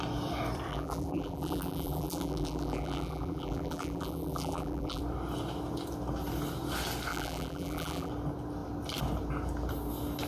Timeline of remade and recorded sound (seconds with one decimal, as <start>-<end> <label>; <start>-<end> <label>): 0.0-0.7 recorded; 0.7-5.0 remade; 5.0-7.1 recorded; 7.1-8.1 remade; 8.1-10.3 recorded